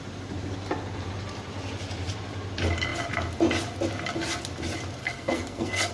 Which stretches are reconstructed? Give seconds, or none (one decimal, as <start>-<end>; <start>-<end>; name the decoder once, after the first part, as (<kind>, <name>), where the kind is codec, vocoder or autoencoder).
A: 5.0-5.9 (codec, SNAC)